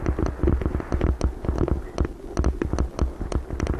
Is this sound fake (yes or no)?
no